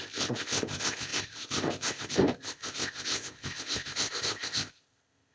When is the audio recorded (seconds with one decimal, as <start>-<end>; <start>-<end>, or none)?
none